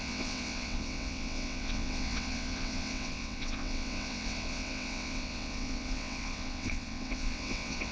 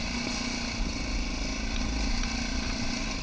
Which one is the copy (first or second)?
first